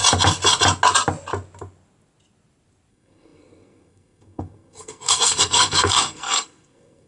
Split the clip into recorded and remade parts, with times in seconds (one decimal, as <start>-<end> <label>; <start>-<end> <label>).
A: 0.0-2.9 recorded; 2.9-7.1 remade